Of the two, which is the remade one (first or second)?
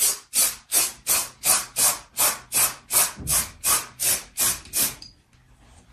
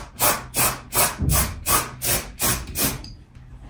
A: first